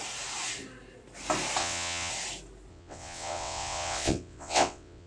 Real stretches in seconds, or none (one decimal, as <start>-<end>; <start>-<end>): 0.0-1.6; 2.1-2.7